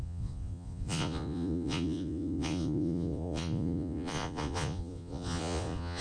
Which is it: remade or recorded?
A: remade